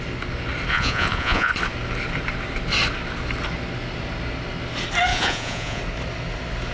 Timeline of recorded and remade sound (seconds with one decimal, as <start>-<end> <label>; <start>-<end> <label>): 0.0-0.7 recorded; 0.7-1.5 remade; 1.5-5.1 recorded; 5.1-5.8 remade; 5.8-6.7 recorded